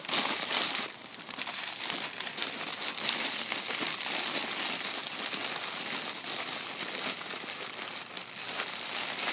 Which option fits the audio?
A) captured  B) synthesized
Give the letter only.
A